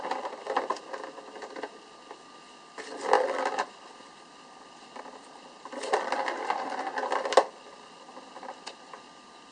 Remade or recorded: recorded